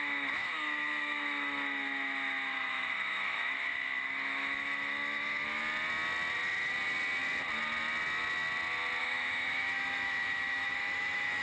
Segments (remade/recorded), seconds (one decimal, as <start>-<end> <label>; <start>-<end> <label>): 0.0-5.6 remade; 5.6-9.0 recorded; 9.0-11.4 remade